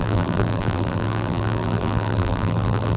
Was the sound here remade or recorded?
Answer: remade